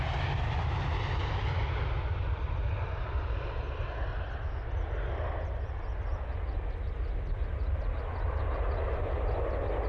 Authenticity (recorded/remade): recorded